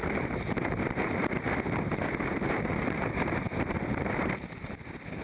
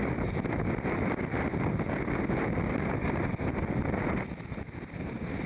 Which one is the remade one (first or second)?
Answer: first